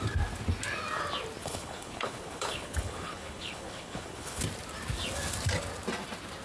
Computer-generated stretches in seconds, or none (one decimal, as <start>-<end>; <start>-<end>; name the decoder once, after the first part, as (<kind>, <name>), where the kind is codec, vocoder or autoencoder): 1.4-4.4 (codec, HILCodec)